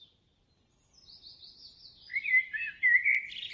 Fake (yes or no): no